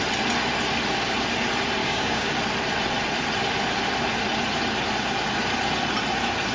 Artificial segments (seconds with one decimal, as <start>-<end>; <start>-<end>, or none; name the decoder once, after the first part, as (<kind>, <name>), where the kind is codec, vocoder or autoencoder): 1.8-2.3 (codec, DAC)